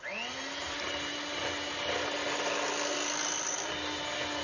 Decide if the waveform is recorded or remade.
recorded